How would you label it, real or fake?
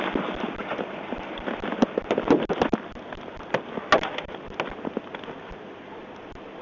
real